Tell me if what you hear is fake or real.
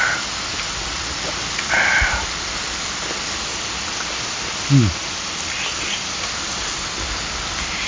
real